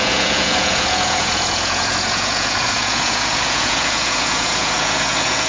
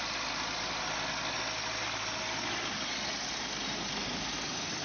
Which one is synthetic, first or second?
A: first